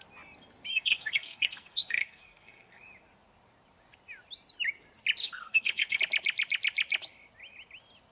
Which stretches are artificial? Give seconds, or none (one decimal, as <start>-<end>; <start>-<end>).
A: 0.7-2.8; 5.2-6.0